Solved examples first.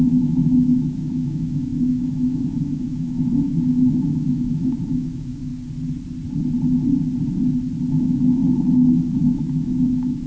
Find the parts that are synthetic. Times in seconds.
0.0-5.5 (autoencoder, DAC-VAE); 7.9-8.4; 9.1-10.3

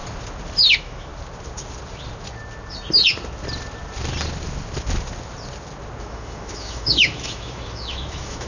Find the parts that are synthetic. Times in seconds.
0.7-1.1 (autoencoder, DAC-VAE); 6.0-8.5

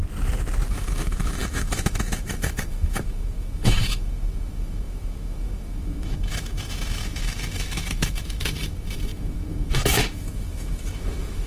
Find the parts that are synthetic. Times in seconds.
0.7-11.5 (autoencoder, DAC-VAE)

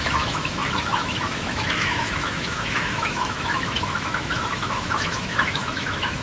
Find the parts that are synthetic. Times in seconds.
0.0-6.2 (autoencoder, DAC-VAE)